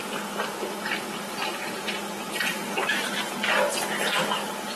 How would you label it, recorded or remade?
recorded